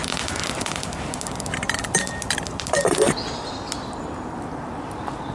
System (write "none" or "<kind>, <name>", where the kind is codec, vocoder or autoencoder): none